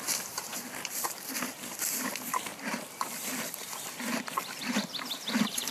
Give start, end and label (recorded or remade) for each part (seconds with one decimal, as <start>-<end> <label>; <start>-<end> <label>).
0.0-5.7 remade

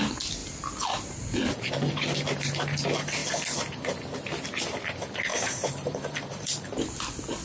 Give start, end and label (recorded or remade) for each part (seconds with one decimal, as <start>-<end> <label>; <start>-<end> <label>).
0.0-5.3 recorded; 5.3-7.0 remade; 7.0-7.4 recorded

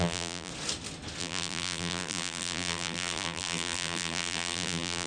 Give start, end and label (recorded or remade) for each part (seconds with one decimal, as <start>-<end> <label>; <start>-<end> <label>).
0.0-0.5 remade; 0.5-1.2 recorded; 1.2-5.1 remade

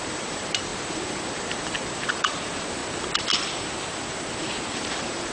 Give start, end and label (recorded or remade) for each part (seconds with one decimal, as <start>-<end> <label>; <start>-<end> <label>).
0.0-2.8 remade; 2.8-4.7 recorded; 4.7-5.3 remade

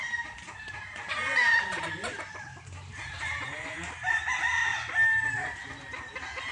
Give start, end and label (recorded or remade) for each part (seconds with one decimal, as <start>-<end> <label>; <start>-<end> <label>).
0.0-6.5 remade